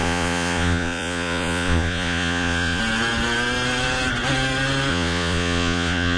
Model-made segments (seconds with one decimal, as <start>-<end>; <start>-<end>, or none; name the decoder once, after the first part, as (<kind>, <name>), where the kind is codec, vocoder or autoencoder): 0.0-2.8 (vocoder, Vocos); 4.9-6.2